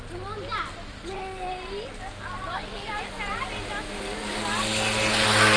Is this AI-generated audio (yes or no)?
no